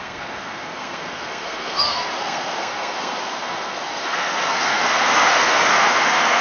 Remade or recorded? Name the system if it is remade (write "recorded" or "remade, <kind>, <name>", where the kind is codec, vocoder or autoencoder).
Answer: remade, codec, SNAC